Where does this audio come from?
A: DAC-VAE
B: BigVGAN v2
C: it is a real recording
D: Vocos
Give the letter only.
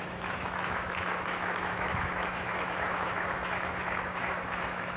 A